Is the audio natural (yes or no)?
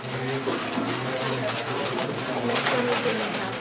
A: yes